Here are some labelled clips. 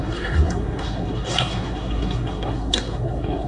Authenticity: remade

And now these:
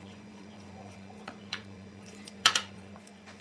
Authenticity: remade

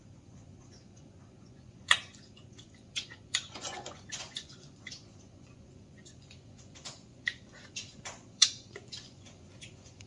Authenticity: remade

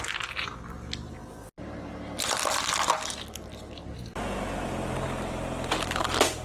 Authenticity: recorded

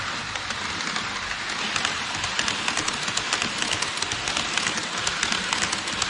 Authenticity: recorded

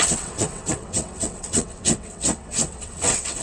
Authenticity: remade